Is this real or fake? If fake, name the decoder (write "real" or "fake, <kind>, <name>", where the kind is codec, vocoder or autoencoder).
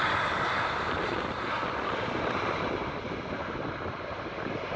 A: fake, vocoder, BigVGAN v2